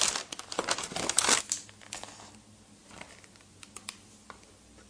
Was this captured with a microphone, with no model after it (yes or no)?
yes